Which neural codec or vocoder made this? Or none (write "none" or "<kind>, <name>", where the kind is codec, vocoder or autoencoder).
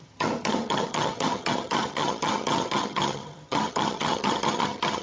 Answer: vocoder, HiFi-GAN